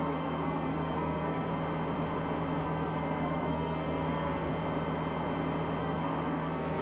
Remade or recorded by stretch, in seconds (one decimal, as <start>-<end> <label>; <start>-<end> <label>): 0.0-1.5 remade; 1.5-2.6 recorded; 2.6-4.5 remade; 4.5-5.8 recorded; 5.8-6.8 remade